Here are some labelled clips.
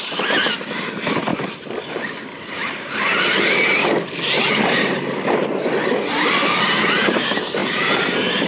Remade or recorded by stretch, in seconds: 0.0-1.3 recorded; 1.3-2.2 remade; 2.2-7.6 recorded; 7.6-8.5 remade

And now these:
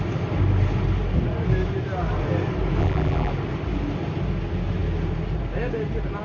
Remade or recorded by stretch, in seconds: 0.0-2.8 recorded; 2.8-3.3 remade; 3.3-6.2 recorded